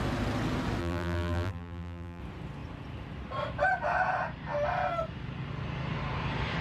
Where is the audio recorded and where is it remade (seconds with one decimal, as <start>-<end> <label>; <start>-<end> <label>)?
0.0-0.8 recorded; 0.8-2.2 remade; 2.2-6.6 recorded